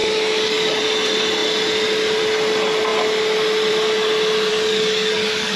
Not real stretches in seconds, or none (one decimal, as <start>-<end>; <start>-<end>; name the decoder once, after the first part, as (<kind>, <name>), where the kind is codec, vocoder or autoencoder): 0.0-0.8 (codec, DAC); 4.5-5.6